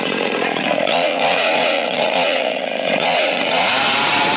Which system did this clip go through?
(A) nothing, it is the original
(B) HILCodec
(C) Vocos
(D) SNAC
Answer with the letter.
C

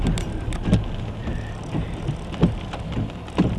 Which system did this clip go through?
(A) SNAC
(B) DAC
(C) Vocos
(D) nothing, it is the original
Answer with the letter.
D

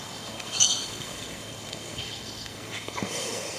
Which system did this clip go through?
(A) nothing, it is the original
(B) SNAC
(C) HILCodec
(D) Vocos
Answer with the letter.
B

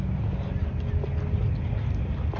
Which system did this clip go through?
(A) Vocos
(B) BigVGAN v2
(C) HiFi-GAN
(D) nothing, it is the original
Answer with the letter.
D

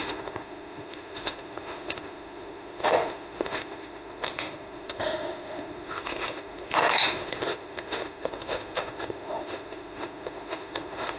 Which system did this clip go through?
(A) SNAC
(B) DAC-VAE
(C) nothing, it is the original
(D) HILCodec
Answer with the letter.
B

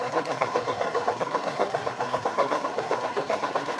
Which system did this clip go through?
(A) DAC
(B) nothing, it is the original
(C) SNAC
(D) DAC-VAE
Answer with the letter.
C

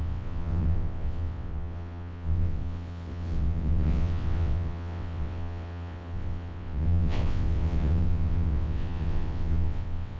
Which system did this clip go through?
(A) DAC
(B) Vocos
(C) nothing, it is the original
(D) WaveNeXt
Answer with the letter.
D